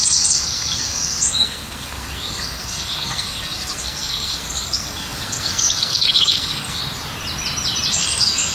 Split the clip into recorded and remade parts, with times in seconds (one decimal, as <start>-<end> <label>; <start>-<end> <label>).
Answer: 0.0-6.8 remade; 6.8-7.9 recorded; 7.9-8.5 remade